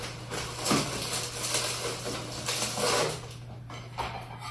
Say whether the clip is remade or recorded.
recorded